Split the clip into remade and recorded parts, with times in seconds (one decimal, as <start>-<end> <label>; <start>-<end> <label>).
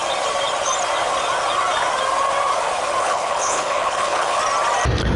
0.0-3.0 recorded; 3.0-4.4 remade; 4.4-5.2 recorded